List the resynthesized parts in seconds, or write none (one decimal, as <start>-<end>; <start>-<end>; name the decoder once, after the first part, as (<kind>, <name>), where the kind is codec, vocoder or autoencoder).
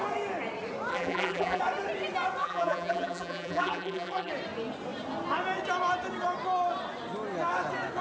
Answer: 0.9-1.6 (vocoder, BigVGAN v2); 2.4-4.3